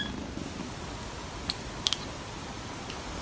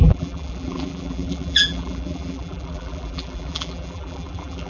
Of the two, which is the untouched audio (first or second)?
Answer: first